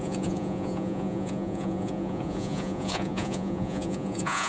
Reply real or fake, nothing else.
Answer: fake